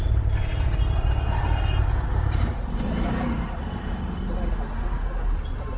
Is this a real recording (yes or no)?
yes